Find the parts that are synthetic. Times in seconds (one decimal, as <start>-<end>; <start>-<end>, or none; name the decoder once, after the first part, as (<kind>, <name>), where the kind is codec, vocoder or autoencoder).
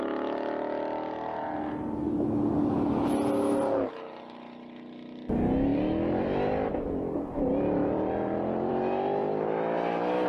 5.7-10.3 (vocoder, BigVGAN v2)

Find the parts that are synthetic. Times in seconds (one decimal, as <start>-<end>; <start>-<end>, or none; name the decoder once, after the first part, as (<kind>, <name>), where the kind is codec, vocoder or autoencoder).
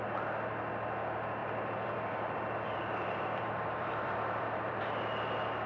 1.4-4.8 (vocoder, BigVGAN v2)